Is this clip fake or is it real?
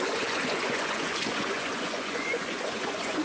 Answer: fake